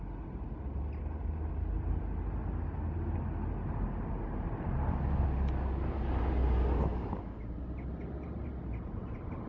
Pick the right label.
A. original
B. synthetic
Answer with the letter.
A